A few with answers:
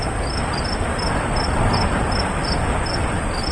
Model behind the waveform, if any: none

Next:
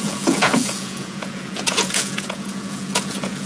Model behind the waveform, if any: vocoder, Vocos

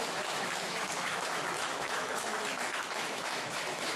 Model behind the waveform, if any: autoencoder, DAC-VAE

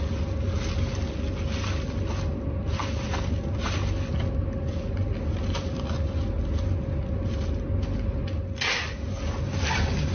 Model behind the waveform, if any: none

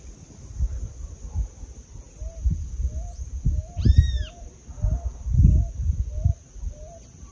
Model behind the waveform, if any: none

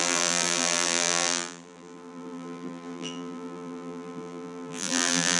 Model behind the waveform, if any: vocoder, BigVGAN v2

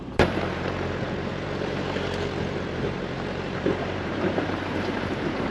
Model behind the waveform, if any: vocoder, BigVGAN v2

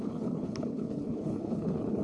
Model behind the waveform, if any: codec, HILCodec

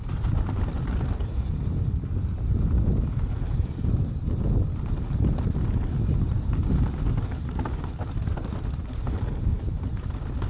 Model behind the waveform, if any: none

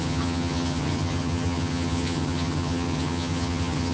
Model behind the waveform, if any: vocoder, HiFi-GAN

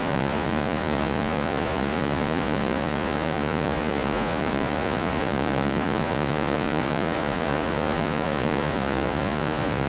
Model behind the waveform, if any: vocoder, Vocos